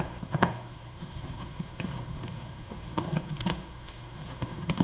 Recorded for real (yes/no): no